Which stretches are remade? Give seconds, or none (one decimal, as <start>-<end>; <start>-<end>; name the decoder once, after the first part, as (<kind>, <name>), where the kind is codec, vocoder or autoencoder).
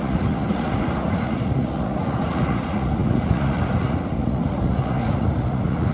0.0-5.9 (vocoder, Vocos)